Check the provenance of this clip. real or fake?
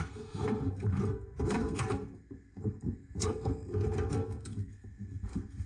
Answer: fake